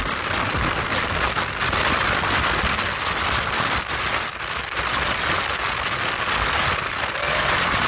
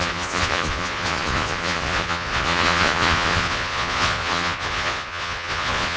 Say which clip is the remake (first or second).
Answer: second